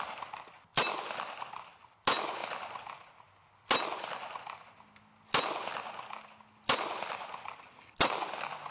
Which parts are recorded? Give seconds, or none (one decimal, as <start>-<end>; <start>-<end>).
0.0-8.7